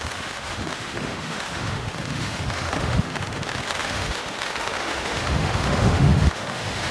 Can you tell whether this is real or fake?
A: fake